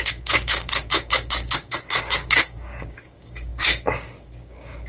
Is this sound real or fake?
fake